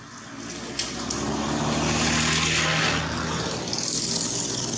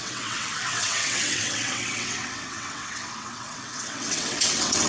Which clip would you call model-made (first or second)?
second